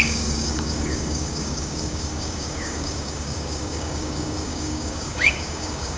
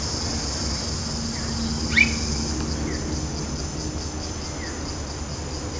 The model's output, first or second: first